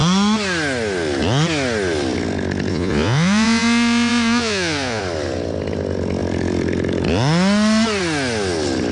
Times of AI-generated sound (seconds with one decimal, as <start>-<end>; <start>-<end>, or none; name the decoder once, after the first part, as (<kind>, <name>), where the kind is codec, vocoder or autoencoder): 2.7-5.0 (vocoder, Vocos)